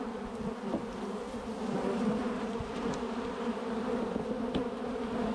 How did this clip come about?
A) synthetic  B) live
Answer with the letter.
B